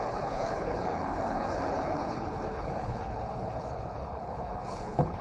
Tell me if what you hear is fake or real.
fake